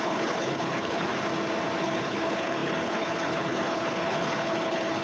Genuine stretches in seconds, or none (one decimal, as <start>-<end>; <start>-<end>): 1.1-1.8